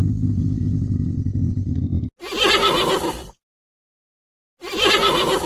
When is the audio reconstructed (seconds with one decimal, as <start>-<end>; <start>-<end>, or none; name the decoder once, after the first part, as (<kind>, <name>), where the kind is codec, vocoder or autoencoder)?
none